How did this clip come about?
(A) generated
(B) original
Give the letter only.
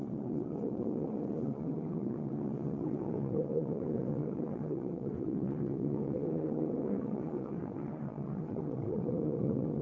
A